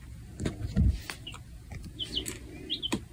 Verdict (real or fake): real